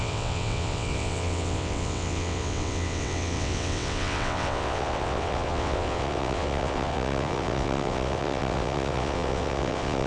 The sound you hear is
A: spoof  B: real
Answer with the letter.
A